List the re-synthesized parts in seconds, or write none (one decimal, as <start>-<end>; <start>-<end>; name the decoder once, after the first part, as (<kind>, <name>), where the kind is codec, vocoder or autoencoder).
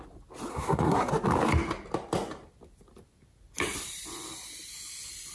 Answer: 0.5-1.1 (codec, SNAC)